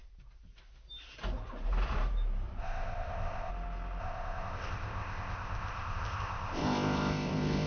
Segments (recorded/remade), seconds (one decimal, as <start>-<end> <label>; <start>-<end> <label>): 0.0-2.6 recorded; 2.6-3.5 remade; 3.5-4.0 recorded; 4.0-7.7 remade